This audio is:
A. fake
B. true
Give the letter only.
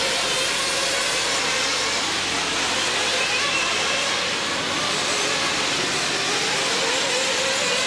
B